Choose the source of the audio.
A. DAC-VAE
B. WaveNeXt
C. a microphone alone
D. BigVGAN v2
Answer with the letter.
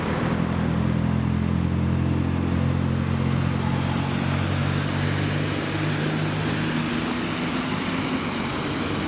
C